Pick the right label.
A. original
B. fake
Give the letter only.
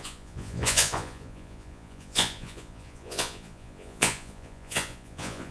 B